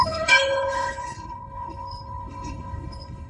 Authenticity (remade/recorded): remade